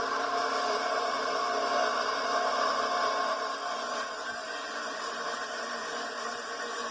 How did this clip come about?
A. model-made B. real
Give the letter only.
A